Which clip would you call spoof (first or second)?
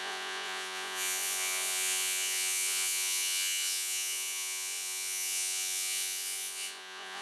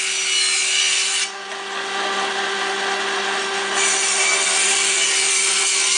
first